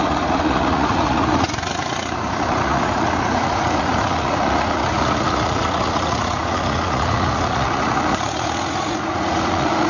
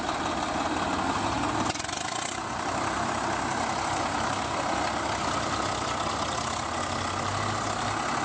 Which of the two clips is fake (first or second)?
first